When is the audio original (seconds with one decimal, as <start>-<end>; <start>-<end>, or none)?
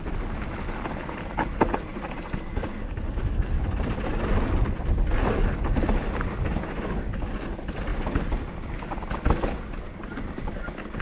0.0-11.0